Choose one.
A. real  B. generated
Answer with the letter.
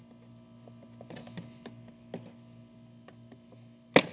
A